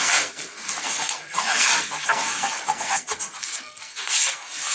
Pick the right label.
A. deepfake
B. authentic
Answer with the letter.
A